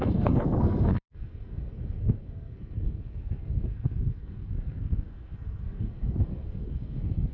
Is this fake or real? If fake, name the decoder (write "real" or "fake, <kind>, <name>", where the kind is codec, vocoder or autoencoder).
fake, codec, SNAC